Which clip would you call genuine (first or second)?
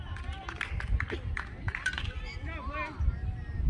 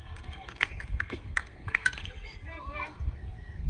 first